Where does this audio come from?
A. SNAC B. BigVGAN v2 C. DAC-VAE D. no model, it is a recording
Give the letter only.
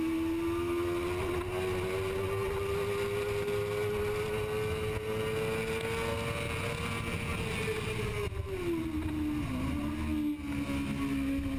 D